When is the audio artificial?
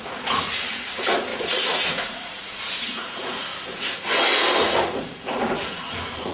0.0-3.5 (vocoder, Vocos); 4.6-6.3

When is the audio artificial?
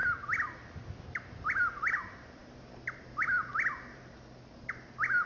none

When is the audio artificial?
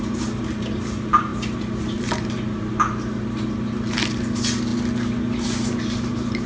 none